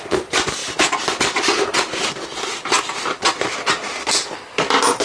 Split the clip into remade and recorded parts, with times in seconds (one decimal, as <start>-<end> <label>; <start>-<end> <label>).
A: 0.0-5.0 recorded